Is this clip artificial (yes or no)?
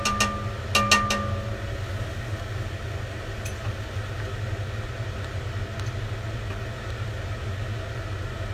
no